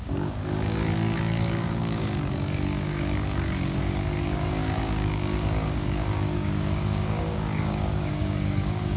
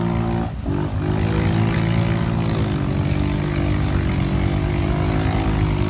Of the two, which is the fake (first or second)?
first